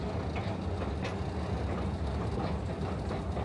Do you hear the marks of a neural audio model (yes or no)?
no